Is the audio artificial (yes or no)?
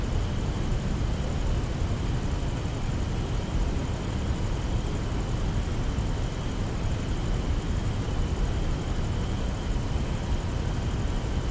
no